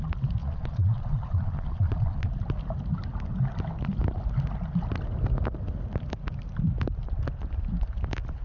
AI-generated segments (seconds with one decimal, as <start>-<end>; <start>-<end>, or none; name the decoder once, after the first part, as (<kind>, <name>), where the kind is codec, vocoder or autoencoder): 0.4-2.3 (vocoder, Vocos)